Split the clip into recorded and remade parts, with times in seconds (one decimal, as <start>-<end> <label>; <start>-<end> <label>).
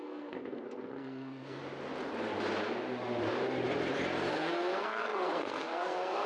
0.0-1.6 remade; 1.6-4.3 recorded; 4.3-6.3 remade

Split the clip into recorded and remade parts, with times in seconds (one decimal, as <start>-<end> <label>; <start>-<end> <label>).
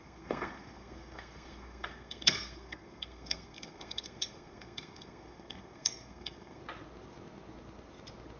0.0-6.6 remade; 6.6-8.4 recorded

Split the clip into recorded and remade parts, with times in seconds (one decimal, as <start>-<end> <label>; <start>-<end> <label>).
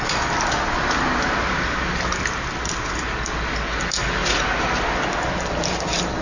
0.0-6.2 recorded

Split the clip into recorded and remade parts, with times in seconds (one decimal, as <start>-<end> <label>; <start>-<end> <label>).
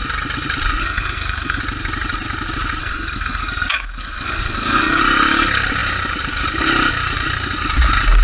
0.0-0.8 recorded; 0.8-1.6 remade; 1.6-2.8 recorded; 2.8-5.0 remade; 5.0-8.2 recorded